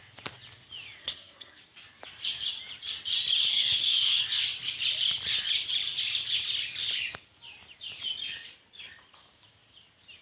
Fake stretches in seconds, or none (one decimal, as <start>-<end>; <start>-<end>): 1.0-1.6; 3.5-4.1

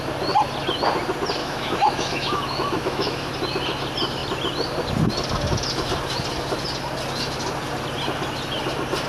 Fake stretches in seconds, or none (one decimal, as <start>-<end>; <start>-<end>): 1.4-3.3

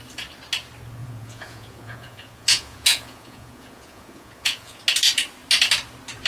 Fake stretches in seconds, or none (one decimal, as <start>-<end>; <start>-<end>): 1.0-4.8

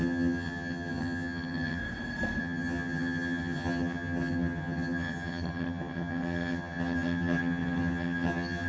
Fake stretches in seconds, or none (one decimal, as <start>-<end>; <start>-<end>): 0.0-1.8; 2.4-8.7

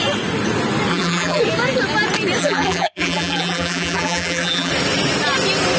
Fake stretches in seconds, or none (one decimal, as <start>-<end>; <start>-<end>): 0.9-1.4; 2.4-4.7

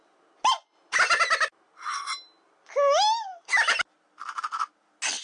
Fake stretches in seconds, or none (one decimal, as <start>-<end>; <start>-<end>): none

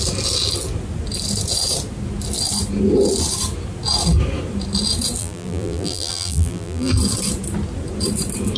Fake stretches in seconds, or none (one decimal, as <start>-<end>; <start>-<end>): 5.2-6.9